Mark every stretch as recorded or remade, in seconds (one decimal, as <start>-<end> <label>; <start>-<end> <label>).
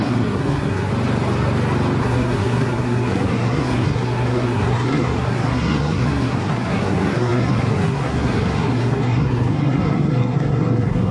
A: 0.0-0.9 remade; 0.9-2.0 recorded; 2.0-11.1 remade